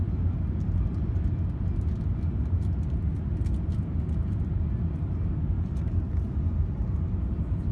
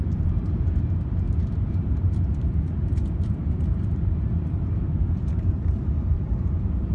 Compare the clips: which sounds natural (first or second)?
first